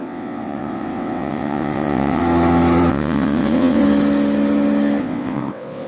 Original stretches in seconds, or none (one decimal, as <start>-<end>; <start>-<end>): 2.2-2.9; 3.8-5.0